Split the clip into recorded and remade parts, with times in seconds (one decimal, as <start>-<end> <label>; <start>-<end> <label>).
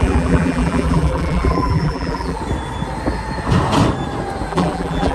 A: 0.0-2.4 remade; 2.4-4.5 recorded; 4.5-5.1 remade